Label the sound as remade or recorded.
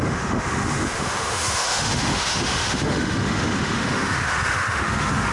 remade